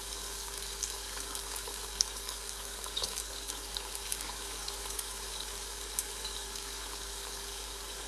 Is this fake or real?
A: fake